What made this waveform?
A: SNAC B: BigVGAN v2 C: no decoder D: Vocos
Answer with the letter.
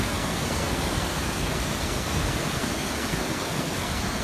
A